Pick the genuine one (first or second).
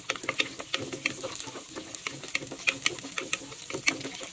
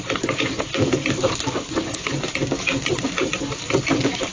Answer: first